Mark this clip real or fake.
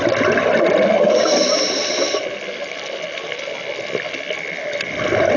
real